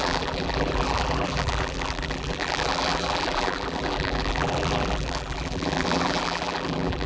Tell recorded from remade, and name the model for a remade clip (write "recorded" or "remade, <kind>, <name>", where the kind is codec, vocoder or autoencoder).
remade, vocoder, BigVGAN v2